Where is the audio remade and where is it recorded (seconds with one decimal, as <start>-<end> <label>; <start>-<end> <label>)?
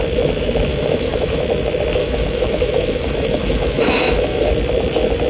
0.0-0.7 recorded; 0.7-1.4 remade; 1.4-2.0 recorded; 2.0-4.5 remade; 4.5-5.3 recorded